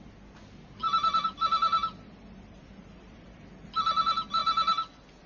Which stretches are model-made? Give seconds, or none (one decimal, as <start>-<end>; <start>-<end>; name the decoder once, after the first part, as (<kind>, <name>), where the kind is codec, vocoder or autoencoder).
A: 0.8-4.0 (vocoder, BigVGAN v2)